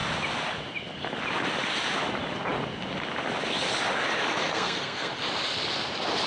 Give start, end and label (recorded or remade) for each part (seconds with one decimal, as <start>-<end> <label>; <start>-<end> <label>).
0.0-4.5 recorded; 4.5-5.1 remade; 5.1-6.3 recorded